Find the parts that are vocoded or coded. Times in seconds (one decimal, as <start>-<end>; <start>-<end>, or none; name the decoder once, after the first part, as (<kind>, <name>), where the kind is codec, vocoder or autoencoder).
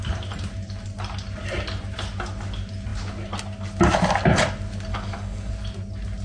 4.9-5.5 (codec, DAC)